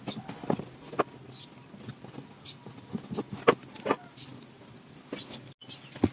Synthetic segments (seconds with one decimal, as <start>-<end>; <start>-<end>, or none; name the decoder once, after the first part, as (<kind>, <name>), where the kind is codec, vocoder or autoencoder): none